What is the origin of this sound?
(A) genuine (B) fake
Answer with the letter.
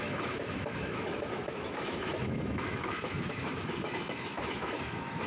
B